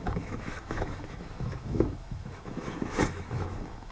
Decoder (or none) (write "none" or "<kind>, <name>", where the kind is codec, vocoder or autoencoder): autoencoder, DAC-VAE